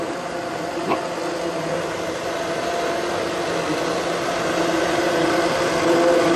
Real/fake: real